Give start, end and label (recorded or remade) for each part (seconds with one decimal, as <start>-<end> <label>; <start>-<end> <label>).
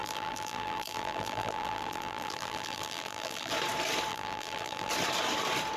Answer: 0.0-3.5 remade; 3.5-4.1 recorded; 4.1-4.9 remade; 4.9-5.8 recorded